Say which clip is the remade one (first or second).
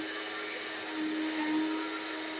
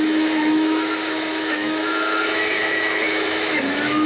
second